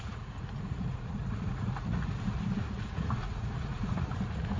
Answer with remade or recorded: remade